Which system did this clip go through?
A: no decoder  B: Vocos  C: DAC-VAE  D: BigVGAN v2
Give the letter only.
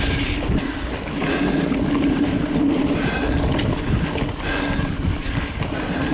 A